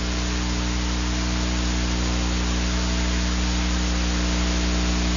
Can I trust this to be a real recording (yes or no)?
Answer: yes